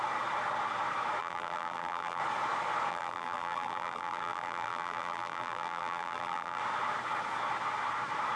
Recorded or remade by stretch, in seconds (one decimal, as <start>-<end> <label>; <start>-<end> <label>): 0.0-1.2 recorded; 1.2-2.2 remade; 2.2-2.9 recorded; 2.9-6.6 remade; 6.6-8.4 recorded